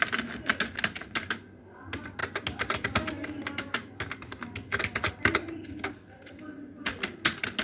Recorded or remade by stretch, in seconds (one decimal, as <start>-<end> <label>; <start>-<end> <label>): 0.0-7.6 recorded